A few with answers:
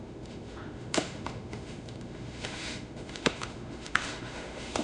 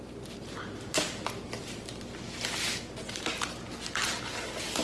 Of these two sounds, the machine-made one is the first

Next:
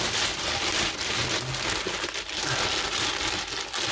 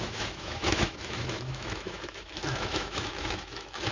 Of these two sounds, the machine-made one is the second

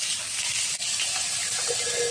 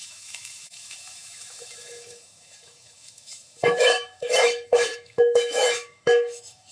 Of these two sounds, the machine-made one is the second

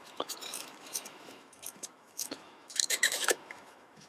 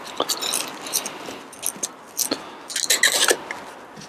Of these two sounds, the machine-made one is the first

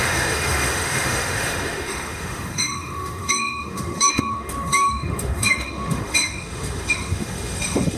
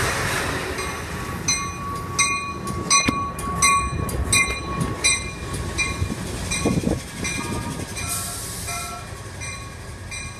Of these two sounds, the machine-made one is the first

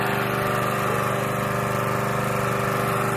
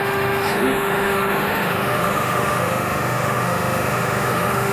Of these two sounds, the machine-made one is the second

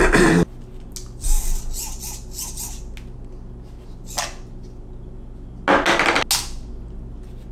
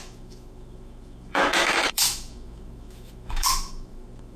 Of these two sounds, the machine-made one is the second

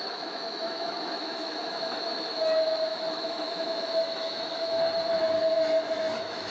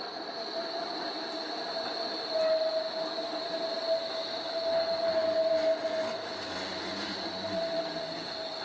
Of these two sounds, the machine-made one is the first